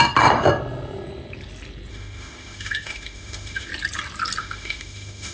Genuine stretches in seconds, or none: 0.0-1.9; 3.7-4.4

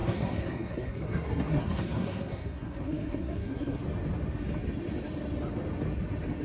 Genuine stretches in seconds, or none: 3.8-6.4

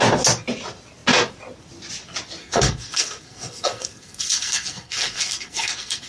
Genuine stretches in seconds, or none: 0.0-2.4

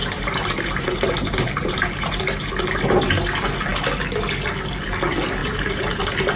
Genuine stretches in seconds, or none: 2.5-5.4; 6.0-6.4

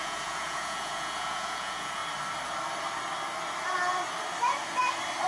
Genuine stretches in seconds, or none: 2.0-5.3

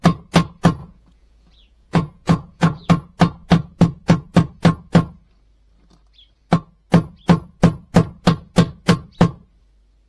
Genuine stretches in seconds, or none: 0.0-0.8; 2.9-10.1